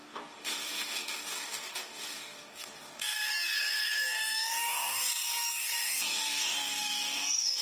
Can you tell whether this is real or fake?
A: fake